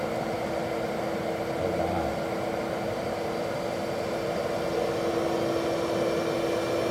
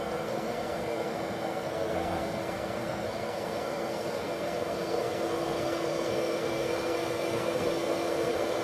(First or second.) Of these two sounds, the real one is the first